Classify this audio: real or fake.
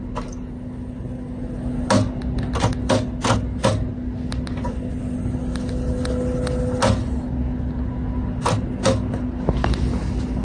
real